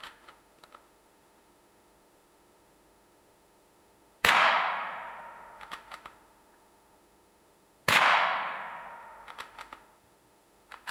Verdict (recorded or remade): remade